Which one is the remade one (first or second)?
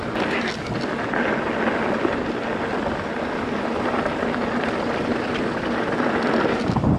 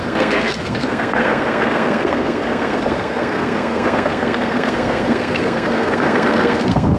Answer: second